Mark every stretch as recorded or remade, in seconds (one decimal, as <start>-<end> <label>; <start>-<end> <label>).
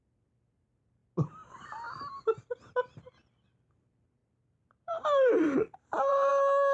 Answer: 0.0-4.2 recorded; 4.2-6.3 remade; 6.3-6.7 recorded